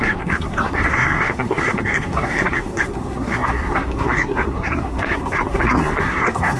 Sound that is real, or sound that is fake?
fake